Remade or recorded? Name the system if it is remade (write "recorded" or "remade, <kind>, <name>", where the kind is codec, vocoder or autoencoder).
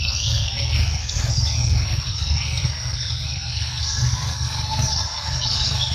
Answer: remade, codec, SNAC